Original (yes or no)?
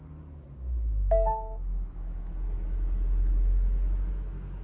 no